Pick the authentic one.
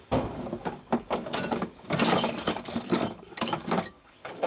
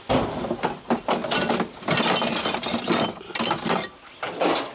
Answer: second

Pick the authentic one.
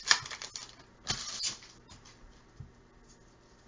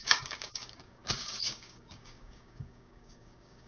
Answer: first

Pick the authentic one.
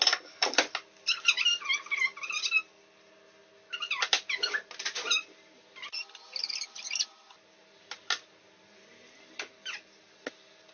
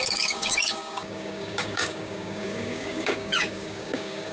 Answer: first